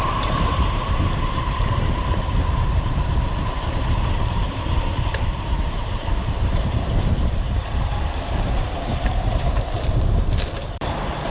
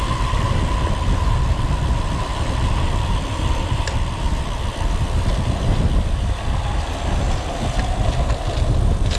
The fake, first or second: first